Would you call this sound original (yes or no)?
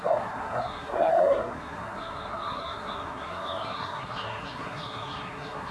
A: no